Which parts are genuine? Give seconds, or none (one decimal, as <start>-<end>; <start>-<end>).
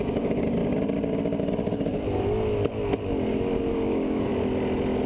0.6-3.7; 4.3-5.1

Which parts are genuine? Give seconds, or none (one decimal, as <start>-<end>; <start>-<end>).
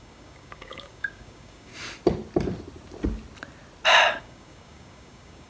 1.7-4.2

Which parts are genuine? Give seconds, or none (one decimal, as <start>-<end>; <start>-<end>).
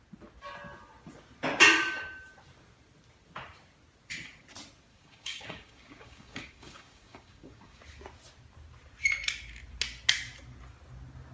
0.0-4.9; 7.8-11.3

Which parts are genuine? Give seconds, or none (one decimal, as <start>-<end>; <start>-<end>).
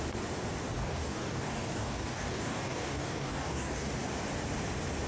0.0-0.8; 3.9-5.1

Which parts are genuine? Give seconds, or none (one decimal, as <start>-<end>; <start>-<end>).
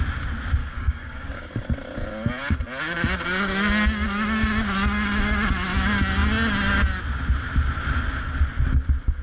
0.0-0.6; 1.6-9.2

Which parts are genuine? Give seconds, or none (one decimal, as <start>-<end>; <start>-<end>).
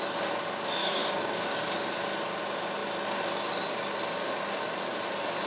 0.0-0.8; 1.4-5.5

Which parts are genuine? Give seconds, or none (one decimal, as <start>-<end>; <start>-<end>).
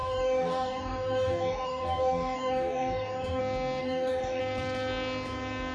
3.4-3.8; 4.4-5.7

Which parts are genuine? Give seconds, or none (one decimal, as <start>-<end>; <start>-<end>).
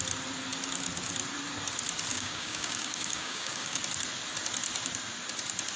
0.0-2.1; 3.8-5.8